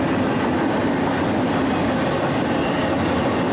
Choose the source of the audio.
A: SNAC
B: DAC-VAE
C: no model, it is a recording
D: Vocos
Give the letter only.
C